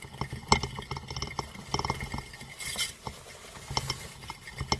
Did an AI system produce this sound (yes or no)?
no